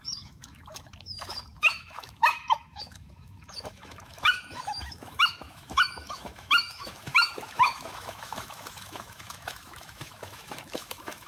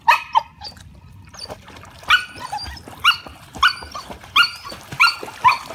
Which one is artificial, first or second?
first